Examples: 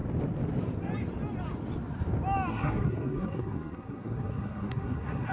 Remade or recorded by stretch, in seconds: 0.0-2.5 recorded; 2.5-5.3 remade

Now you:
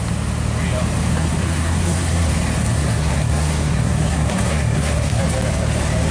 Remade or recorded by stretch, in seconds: 0.0-1.1 recorded; 1.1-2.3 remade; 2.3-2.7 recorded; 2.7-5.2 remade; 5.2-6.1 recorded

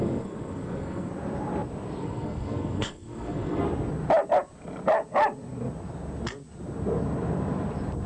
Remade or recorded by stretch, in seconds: 0.0-1.1 remade; 1.1-2.0 recorded; 2.0-3.6 remade; 3.6-8.1 recorded

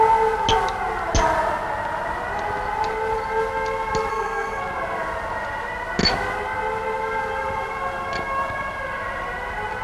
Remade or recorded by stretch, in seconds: 0.0-4.1 recorded; 4.1-4.6 remade; 4.6-9.8 recorded

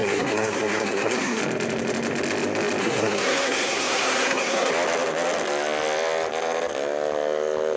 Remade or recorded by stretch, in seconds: 0.0-1.4 remade; 1.4-2.8 recorded; 2.8-4.7 remade; 4.7-7.8 recorded

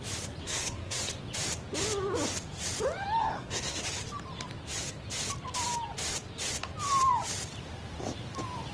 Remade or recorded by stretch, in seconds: 0.0-0.4 recorded; 0.4-1.0 remade; 1.0-3.2 recorded; 3.2-3.8 remade; 3.8-8.7 recorded

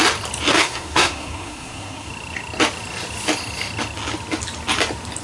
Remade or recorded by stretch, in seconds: 0.0-0.5 recorded; 0.5-2.1 remade; 2.1-5.2 recorded